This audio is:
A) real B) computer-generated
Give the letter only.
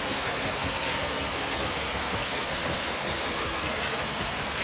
B